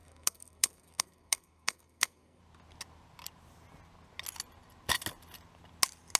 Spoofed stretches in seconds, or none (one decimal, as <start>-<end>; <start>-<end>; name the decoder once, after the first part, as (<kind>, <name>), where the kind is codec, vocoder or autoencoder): 0.0-2.4 (codec, SNAC)